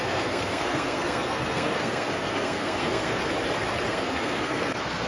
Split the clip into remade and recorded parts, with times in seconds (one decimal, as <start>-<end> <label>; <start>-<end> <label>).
0.0-3.2 remade; 3.2-3.9 recorded; 3.9-5.1 remade